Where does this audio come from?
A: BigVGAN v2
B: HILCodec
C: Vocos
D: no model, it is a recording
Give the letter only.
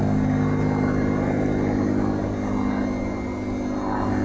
D